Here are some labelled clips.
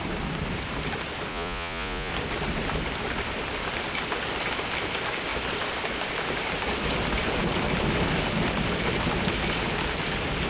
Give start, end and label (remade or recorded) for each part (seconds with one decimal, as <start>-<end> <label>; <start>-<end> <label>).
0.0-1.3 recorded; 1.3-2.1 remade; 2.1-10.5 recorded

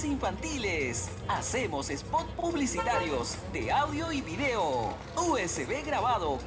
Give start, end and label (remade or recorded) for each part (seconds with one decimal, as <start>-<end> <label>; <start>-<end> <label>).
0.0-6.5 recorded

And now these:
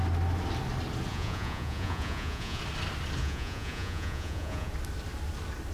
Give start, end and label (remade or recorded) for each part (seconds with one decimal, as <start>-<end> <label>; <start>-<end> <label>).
0.0-1.1 recorded; 1.1-2.6 remade; 2.6-3.2 recorded; 3.2-4.7 remade; 4.7-5.7 recorded